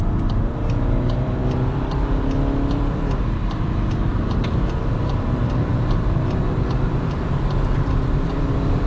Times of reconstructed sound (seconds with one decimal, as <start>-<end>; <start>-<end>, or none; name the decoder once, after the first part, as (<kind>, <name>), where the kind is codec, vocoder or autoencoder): 0.0-8.9 (vocoder, BigVGAN v2)